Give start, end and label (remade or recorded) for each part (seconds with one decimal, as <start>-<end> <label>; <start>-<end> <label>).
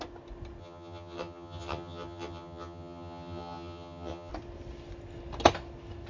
0.0-0.6 recorded; 0.6-4.3 remade; 4.3-6.1 recorded